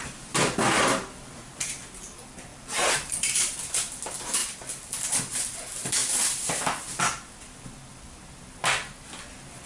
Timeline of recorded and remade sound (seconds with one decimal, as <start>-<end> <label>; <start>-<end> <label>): 0.0-2.5 recorded; 2.5-3.4 remade; 3.4-9.7 recorded